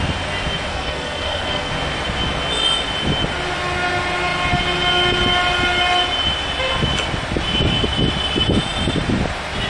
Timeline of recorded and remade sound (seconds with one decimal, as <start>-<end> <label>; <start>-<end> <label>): 0.0-0.7 recorded; 0.7-1.7 remade; 1.7-9.7 recorded